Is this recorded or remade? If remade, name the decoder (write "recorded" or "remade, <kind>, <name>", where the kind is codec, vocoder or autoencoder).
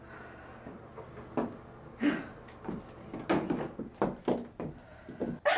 recorded